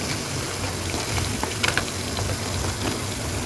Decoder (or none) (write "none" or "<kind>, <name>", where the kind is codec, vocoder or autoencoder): none